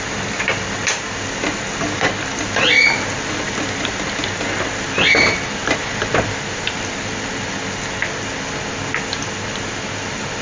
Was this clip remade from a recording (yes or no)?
no